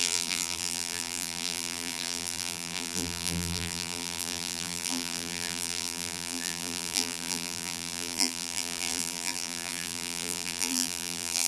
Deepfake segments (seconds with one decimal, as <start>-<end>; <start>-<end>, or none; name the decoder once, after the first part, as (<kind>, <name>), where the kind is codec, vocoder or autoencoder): 0.0-11.5 (vocoder, BigVGAN v2)